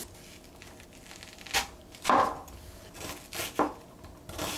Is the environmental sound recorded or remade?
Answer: recorded